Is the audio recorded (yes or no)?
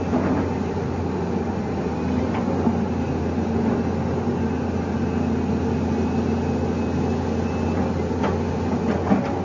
yes